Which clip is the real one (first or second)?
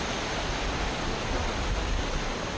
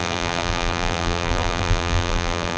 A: first